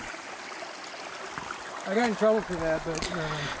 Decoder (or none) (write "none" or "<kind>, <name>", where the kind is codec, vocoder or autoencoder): none